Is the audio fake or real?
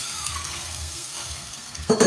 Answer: fake